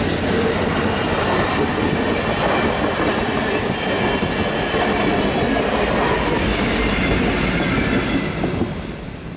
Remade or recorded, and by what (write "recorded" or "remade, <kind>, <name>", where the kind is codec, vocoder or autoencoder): recorded